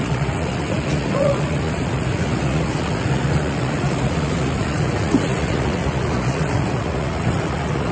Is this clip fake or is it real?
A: fake